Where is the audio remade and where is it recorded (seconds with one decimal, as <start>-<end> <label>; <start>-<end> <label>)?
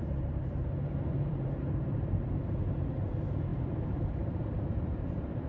0.0-5.5 remade